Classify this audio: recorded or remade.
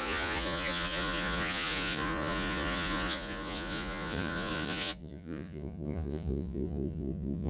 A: remade